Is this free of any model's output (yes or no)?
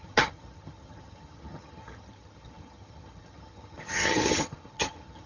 no